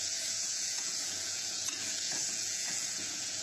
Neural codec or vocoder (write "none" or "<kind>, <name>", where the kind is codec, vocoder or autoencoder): vocoder, Vocos